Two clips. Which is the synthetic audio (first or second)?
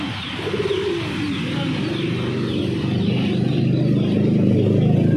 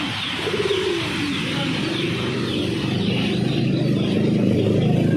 second